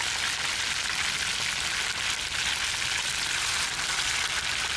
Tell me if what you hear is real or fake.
real